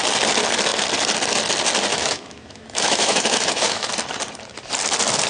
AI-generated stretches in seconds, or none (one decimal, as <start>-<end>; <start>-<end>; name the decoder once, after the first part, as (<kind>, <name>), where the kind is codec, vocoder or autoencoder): 1.9-3.9 (autoencoder, DAC-VAE)